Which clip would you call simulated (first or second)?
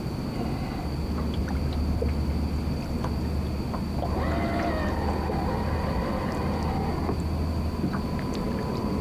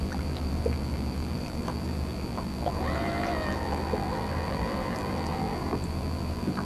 second